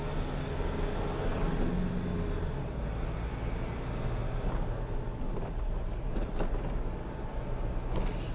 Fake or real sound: real